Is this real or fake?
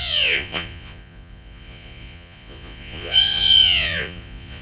fake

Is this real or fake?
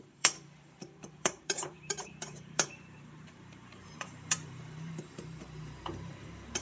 fake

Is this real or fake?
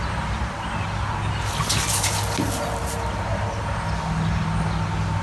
real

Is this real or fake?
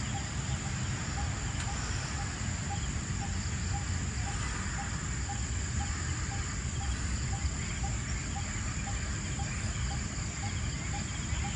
real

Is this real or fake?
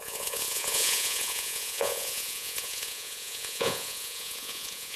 fake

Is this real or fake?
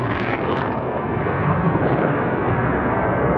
fake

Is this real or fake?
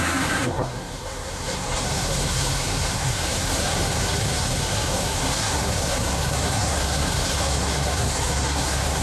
fake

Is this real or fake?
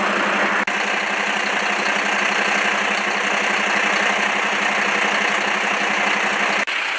real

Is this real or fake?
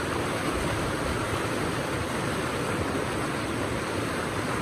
real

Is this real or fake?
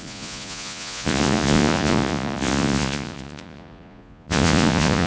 fake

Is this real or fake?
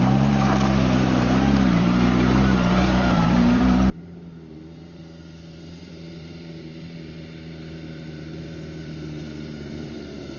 fake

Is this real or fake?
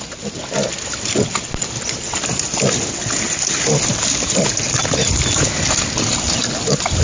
real